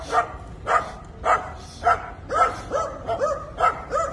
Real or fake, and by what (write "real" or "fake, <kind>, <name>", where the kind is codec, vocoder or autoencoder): real